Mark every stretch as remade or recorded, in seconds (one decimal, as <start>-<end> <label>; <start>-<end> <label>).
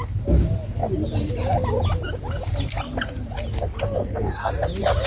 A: 0.0-4.0 recorded; 4.0-4.5 remade; 4.5-5.1 recorded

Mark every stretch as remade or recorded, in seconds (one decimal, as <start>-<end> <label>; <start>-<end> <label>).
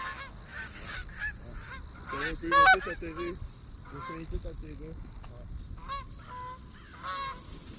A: 0.0-0.5 recorded; 0.5-1.7 remade; 1.7-3.9 recorded; 3.9-5.6 remade; 5.6-7.8 recorded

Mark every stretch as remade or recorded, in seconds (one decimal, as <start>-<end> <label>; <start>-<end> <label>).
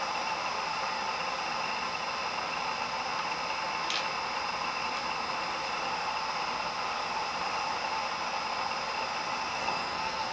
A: 0.0-9.5 recorded; 9.5-10.3 remade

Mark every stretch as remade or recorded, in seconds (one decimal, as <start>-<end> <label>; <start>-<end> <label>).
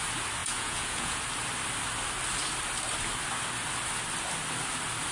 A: 0.0-0.4 recorded; 0.4-1.2 remade; 1.2-5.1 recorded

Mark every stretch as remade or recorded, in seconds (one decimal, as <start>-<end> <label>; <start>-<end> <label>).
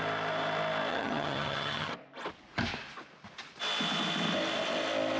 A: 0.0-0.9 recorded; 0.9-1.9 remade; 1.9-5.2 recorded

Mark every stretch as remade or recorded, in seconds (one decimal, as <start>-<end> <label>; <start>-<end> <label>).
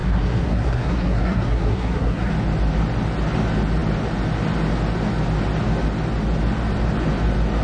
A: 0.0-2.3 remade; 2.3-7.6 recorded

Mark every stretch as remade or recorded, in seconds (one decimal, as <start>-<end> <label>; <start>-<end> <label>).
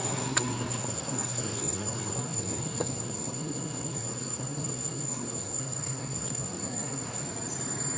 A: 0.0-7.2 remade; 7.2-8.0 recorded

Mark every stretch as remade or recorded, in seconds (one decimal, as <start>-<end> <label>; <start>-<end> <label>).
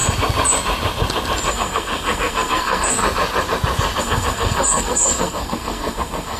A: 0.0-1.5 recorded; 1.5-3.0 remade; 3.0-4.0 recorded; 4.0-6.4 remade